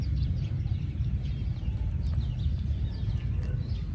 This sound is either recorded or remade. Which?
recorded